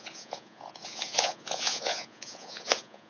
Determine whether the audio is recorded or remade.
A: remade